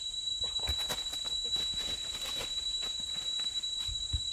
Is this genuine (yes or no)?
yes